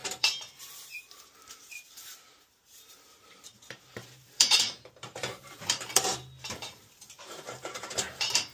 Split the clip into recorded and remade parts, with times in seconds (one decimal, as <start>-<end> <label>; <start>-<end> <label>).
0.0-8.5 remade